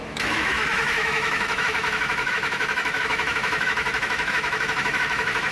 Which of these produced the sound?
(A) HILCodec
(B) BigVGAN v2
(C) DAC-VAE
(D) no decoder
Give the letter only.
C